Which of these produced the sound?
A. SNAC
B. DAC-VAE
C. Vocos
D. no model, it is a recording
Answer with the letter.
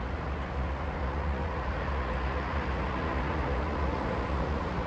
C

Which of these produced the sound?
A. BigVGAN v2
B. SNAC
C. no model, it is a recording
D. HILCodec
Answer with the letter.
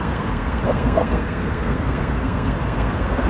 B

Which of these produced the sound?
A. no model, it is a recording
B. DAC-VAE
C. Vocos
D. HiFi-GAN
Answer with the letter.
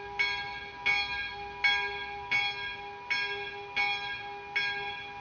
A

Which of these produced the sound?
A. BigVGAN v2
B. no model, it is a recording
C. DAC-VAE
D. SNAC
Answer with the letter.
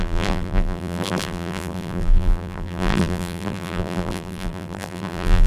A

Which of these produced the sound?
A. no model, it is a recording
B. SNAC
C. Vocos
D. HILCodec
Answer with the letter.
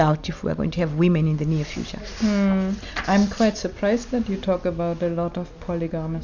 A